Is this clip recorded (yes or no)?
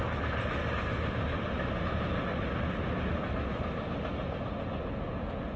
yes